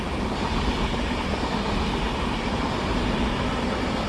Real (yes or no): yes